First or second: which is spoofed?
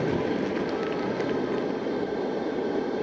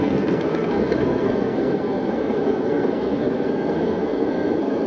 second